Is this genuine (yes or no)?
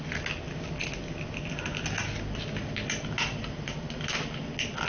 yes